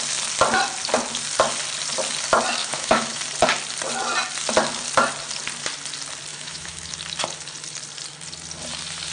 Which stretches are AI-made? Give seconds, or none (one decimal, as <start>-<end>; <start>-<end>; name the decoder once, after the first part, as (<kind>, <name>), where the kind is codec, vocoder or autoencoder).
2.6-3.2 (autoencoder, DAC-VAE); 6.3-6.9

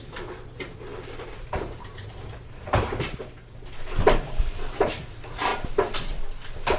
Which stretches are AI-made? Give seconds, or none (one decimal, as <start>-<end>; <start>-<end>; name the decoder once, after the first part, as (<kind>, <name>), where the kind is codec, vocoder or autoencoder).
0.0-3.4 (vocoder, BigVGAN v2); 4.0-5.5